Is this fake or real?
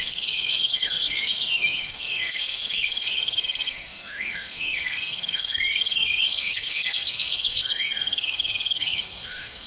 fake